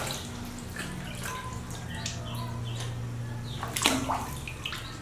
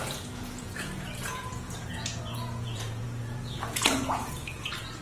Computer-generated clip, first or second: second